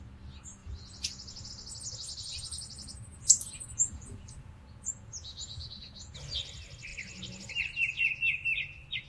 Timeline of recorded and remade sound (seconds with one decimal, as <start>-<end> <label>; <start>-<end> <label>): 0.0-0.6 recorded; 0.6-1.5 remade; 1.5-2.3 recorded; 2.3-6.1 remade; 6.1-9.1 recorded